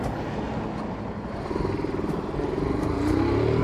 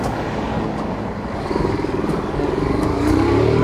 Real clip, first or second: first